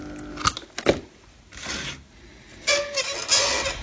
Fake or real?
real